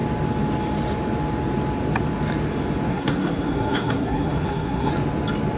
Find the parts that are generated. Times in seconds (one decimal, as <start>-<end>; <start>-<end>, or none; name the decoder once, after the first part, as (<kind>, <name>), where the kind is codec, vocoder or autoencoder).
2.9-4.9 (codec, SNAC)